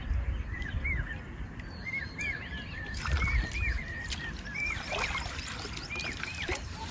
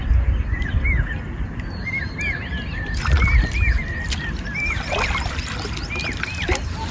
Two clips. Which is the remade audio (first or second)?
first